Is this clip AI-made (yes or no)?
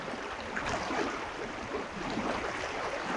no